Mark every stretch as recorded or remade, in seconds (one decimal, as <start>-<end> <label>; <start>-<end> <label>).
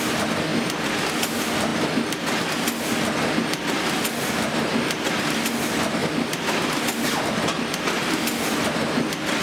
0.0-6.0 recorded; 6.0-8.2 remade; 8.2-9.4 recorded